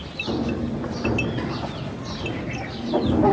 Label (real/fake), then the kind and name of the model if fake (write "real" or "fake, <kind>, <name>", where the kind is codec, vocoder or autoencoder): real